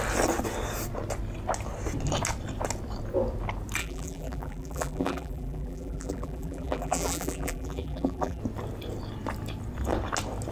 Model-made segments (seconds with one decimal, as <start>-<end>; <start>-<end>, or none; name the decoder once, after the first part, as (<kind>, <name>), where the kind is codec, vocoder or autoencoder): 3.8-8.4 (vocoder, BigVGAN v2)